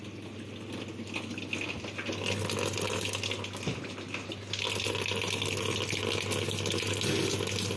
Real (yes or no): yes